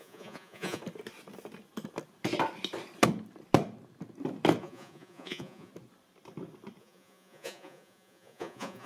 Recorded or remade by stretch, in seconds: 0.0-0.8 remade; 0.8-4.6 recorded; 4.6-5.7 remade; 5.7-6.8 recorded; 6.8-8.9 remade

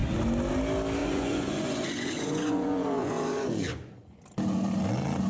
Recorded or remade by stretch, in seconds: 0.0-1.0 recorded; 1.0-4.2 remade; 4.2-5.3 recorded

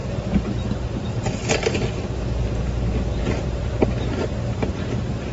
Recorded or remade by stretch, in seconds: 0.0-3.2 recorded; 3.2-5.3 remade

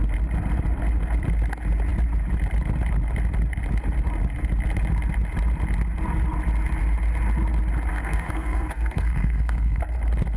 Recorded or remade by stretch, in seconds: 0.0-7.9 recorded; 7.9-9.8 remade; 9.8-10.4 recorded

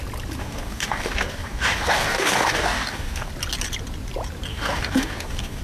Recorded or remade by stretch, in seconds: 0.0-0.4 recorded; 0.4-3.3 remade; 3.3-4.5 recorded; 4.5-5.6 remade

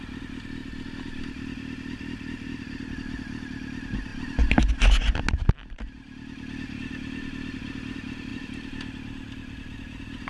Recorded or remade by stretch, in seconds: 0.0-10.3 recorded

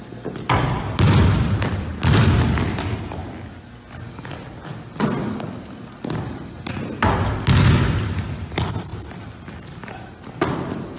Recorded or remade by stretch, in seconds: 0.0-11.0 recorded